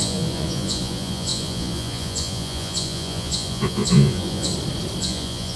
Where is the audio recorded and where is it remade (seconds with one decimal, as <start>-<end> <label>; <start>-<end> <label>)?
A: 0.0-4.5 remade; 4.5-5.0 recorded; 5.0-5.6 remade